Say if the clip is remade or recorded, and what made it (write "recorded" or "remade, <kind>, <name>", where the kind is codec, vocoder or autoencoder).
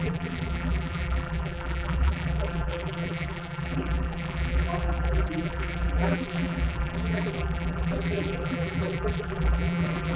remade, vocoder, BigVGAN v2